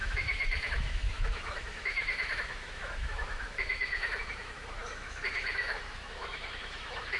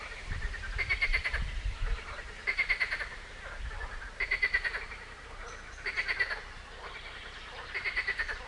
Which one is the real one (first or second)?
second